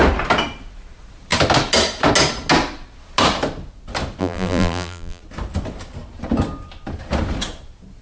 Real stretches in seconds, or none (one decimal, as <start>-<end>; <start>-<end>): 0.0-4.2; 5.2-8.0